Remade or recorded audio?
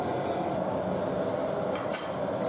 recorded